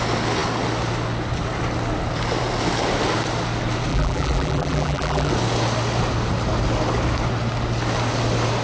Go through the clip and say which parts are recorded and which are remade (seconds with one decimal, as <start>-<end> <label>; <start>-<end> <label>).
0.0-3.9 recorded; 3.9-5.3 remade; 5.3-8.6 recorded